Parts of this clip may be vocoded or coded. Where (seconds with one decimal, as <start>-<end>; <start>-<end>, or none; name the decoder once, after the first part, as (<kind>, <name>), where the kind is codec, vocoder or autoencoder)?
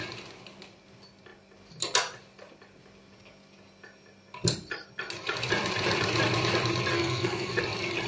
6.9-7.6 (codec, SNAC)